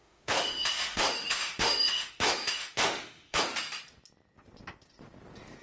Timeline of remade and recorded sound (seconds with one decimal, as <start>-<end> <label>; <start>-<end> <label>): 0.0-3.4 remade; 3.4-5.6 recorded